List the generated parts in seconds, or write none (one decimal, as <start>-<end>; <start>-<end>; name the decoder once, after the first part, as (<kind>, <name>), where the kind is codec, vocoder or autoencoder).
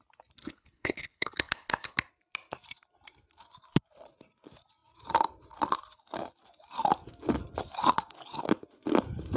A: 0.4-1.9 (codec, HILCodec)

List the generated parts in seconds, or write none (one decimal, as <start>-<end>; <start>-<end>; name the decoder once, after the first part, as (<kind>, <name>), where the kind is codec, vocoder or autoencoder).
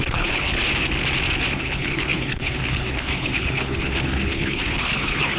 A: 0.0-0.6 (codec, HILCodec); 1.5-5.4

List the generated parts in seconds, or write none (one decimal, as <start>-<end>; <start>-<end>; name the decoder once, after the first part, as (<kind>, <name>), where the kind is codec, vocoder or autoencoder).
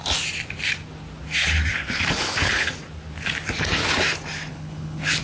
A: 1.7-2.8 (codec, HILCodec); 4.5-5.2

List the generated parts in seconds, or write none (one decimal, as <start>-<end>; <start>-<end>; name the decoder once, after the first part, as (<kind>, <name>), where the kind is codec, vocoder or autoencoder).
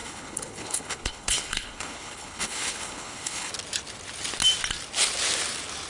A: 0.0-3.5 (codec, HILCodec)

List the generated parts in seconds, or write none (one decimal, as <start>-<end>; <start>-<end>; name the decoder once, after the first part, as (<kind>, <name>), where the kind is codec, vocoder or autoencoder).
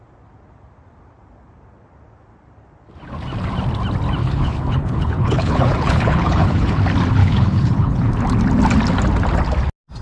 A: 4.2-6.8 (codec, HILCodec); 7.2-8.1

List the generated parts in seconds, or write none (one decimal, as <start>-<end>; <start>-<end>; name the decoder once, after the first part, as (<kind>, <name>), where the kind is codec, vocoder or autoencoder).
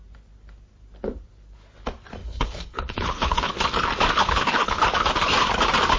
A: 2.2-3.5 (codec, HILCodec); 4.2-4.8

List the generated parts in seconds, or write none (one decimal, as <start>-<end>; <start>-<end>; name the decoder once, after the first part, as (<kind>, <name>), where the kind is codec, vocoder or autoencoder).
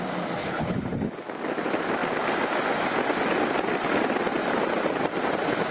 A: 0.4-1.1 (codec, HILCodec)